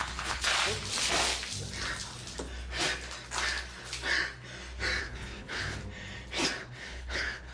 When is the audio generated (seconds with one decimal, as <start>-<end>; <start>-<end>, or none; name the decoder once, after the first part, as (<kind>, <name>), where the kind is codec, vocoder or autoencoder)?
0.0-0.5 (codec, HILCodec); 5.0-5.8; 6.6-7.5